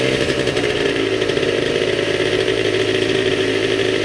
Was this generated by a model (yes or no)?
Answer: yes